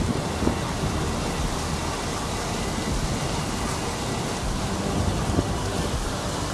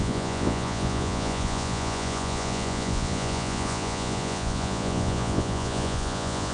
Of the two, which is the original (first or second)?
first